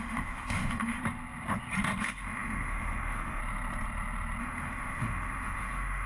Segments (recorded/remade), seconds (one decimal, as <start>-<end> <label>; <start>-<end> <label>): 0.0-1.0 remade; 1.0-2.0 recorded; 2.0-3.4 remade; 3.4-4.4 recorded; 4.4-6.1 remade